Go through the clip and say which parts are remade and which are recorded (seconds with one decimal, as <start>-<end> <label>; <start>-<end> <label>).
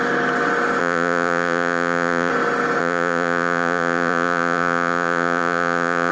0.0-0.8 recorded; 0.8-2.3 remade; 2.3-2.8 recorded; 2.8-6.1 remade